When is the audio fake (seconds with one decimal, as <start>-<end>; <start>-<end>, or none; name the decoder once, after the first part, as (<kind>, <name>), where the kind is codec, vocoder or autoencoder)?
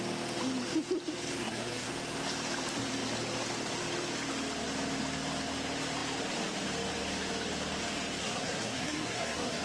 1.4-1.9 (codec, SNAC); 8.2-9.6